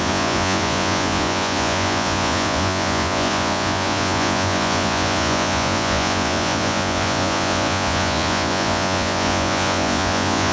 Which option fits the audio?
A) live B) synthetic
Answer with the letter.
B